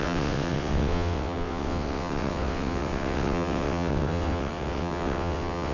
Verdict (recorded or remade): remade